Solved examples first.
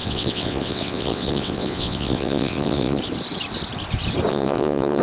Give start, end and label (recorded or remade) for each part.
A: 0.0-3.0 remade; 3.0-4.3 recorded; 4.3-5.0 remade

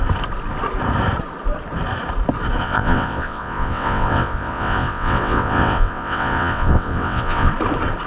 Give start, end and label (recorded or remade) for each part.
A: 0.0-2.6 recorded; 2.6-7.5 remade; 7.5-8.1 recorded

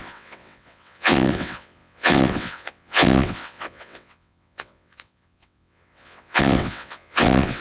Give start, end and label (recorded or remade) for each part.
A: 0.0-7.6 remade

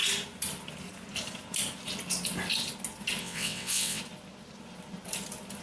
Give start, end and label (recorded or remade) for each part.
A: 0.0-3.2 recorded; 3.2-4.0 remade; 4.0-5.6 recorded

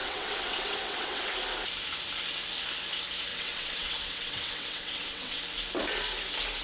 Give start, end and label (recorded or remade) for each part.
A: 0.0-1.3 remade; 1.3-3.3 recorded; 3.3-5.4 remade; 5.4-6.6 recorded

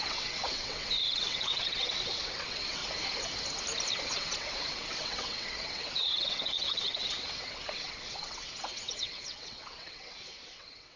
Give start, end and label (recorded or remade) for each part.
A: 0.0-2.8 remade; 2.8-4.0 recorded; 4.0-11.0 remade

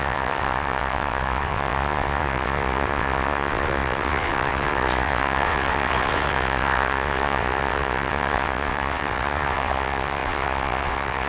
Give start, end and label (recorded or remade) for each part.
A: 0.0-11.3 remade